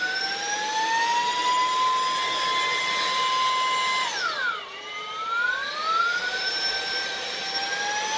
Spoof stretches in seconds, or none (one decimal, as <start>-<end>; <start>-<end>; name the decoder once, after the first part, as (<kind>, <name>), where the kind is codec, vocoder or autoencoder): 4.1-5.2 (vocoder, BigVGAN v2); 5.8-7.4